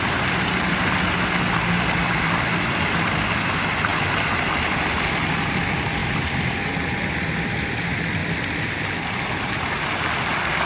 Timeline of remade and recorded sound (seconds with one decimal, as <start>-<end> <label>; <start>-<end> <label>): 0.0-2.0 recorded; 2.0-2.6 remade; 2.6-6.0 recorded; 6.0-6.6 remade; 6.6-8.2 recorded; 8.2-9.9 remade; 9.9-10.7 recorded